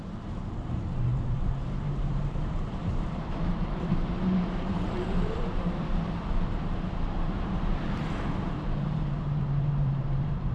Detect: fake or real fake